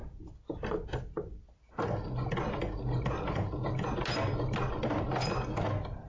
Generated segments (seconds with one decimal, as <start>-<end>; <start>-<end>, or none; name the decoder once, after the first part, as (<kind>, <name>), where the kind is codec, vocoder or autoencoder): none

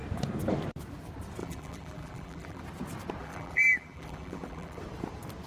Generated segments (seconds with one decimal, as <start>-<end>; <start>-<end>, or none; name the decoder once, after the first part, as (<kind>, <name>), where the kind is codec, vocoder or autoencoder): 1.4-2.6 (vocoder, BigVGAN v2); 3.2-4.8

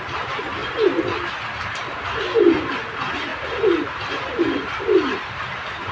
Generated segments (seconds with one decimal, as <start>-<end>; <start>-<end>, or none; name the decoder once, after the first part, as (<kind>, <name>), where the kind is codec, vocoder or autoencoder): 3.3-5.9 (vocoder, BigVGAN v2)

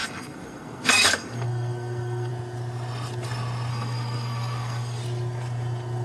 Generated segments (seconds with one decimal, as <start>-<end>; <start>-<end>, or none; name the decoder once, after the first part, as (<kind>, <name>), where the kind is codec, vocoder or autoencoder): 0.0-2.3 (codec, SNAC); 3.7-5.0

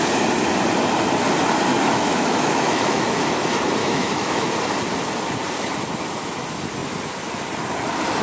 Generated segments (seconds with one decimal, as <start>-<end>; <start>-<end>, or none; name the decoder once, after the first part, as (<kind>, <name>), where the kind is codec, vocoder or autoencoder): 1.7-3.2 (autoencoder, DAC-VAE); 3.8-4.5